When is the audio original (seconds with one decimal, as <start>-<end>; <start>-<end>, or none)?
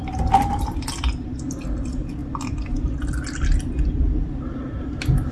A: 0.0-5.3